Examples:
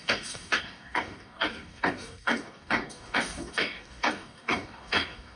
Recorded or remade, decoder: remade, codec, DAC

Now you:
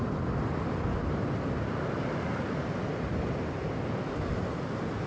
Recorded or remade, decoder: recorded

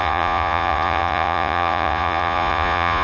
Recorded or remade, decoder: remade, vocoder, Vocos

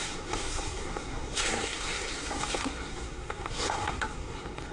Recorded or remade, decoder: remade, codec, SNAC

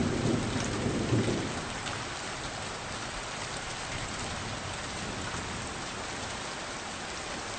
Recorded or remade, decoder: recorded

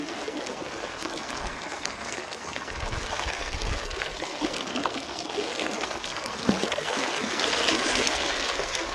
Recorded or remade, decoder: remade, codec, SNAC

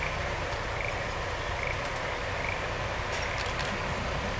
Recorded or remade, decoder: recorded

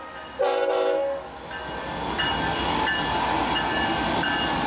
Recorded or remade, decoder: recorded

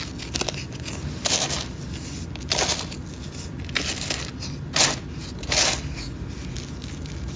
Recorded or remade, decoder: recorded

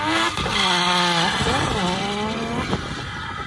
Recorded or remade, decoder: recorded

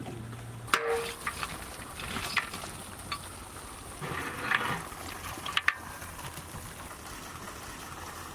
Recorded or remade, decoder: recorded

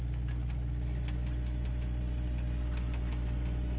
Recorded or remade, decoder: recorded